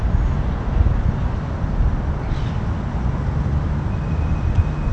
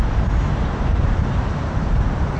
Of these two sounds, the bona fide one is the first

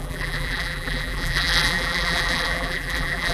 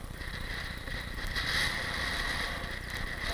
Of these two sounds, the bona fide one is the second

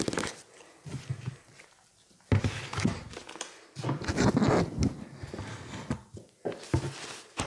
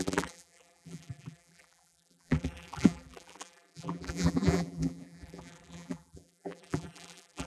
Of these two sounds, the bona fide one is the first